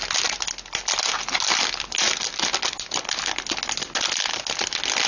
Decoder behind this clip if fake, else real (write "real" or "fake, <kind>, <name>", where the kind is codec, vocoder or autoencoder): real